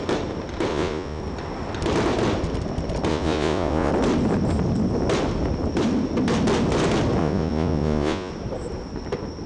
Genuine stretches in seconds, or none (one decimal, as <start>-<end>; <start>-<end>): 0.0-0.7; 1.2-3.1; 3.9-7.2; 8.3-9.5